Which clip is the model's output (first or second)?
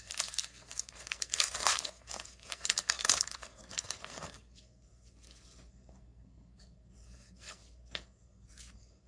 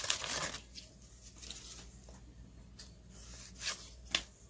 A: first